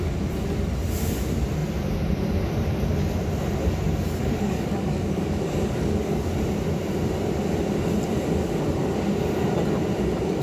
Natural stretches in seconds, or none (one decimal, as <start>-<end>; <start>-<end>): 0.0-4.2; 6.3-10.4